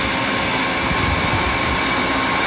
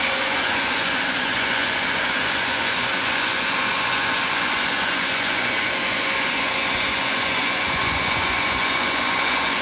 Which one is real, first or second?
first